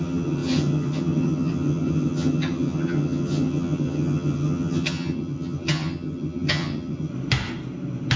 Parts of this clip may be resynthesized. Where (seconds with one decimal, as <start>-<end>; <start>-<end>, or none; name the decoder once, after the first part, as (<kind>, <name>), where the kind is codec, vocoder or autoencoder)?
0.0-7.1 (vocoder, HiFi-GAN)